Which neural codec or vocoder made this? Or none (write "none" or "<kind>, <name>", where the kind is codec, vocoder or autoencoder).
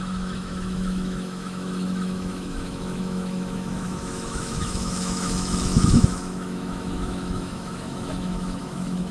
autoencoder, DAC-VAE